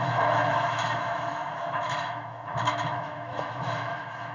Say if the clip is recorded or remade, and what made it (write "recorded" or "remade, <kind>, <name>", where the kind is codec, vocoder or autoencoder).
remade, autoencoder, DAC-VAE